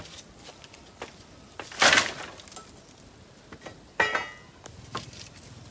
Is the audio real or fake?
real